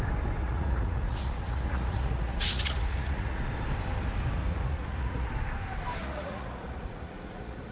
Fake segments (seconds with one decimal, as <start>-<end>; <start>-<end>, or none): 0.4-3.4; 4.4-5.3; 6.0-7.7